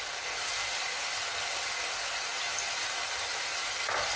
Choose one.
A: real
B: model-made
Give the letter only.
A